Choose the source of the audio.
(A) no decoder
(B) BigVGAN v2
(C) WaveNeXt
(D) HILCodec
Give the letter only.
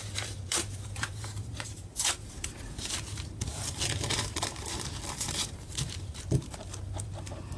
B